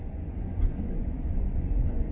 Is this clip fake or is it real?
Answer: fake